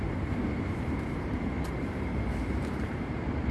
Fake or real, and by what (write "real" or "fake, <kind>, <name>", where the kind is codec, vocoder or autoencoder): fake, vocoder, BigVGAN v2